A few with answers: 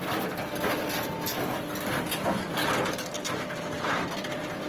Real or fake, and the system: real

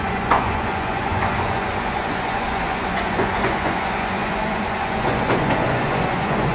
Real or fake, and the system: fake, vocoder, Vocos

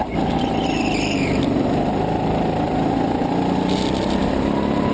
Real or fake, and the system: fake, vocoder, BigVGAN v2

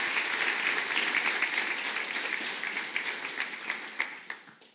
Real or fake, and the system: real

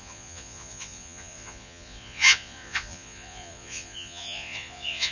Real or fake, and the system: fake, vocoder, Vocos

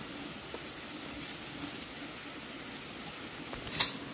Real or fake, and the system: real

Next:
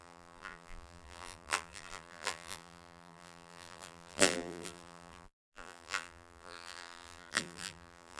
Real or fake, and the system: fake, vocoder, BigVGAN v2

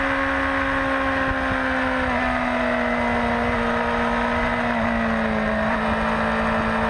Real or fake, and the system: real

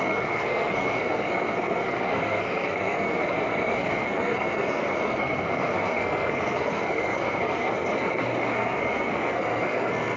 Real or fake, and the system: fake, codec, SNAC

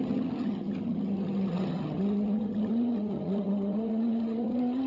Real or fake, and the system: fake, vocoder, HiFi-GAN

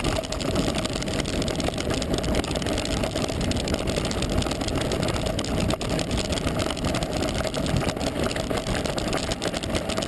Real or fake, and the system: real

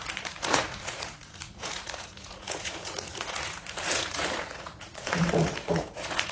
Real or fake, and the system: fake, vocoder, Vocos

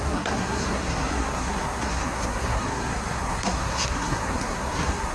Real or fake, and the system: fake, codec, SNAC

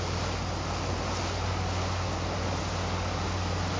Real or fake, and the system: real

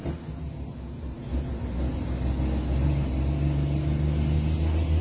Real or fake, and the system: real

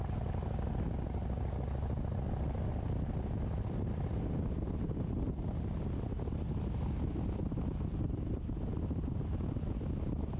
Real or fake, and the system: real